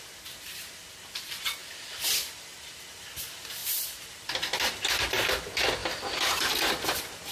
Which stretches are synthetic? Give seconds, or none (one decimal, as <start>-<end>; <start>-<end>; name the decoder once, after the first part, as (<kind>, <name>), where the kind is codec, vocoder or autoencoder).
1.6-2.5 (vocoder, BigVGAN v2); 5.8-6.7